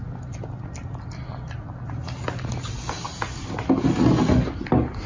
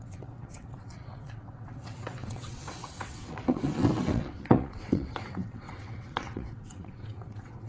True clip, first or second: first